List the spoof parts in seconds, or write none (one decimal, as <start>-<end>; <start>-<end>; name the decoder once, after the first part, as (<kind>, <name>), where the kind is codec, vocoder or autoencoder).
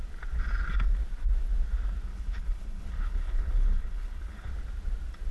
2.1-4.5 (codec, HILCodec)